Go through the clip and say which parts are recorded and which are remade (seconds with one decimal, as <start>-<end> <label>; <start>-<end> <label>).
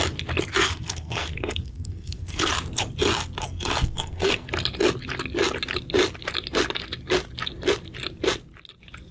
0.0-0.5 recorded; 0.5-2.5 remade; 2.5-3.4 recorded; 3.4-4.5 remade; 4.5-9.1 recorded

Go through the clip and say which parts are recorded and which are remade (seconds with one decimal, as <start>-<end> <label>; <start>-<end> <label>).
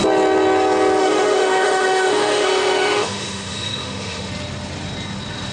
0.0-1.0 recorded; 1.0-4.3 remade; 4.3-5.5 recorded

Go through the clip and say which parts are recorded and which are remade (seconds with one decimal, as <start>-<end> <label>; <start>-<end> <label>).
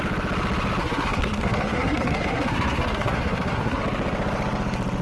0.0-0.8 recorded; 0.8-3.8 remade; 3.8-5.0 recorded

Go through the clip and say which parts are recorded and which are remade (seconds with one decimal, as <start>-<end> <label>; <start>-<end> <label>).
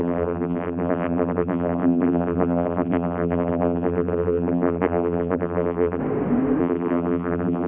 0.0-6.0 remade; 6.0-6.6 recorded; 6.6-7.7 remade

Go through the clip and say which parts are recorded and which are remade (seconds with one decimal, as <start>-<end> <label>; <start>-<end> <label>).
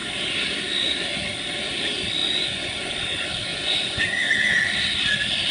0.0-2.2 recorded; 2.2-2.9 remade; 2.9-3.5 recorded; 3.5-4.6 remade; 4.6-5.5 recorded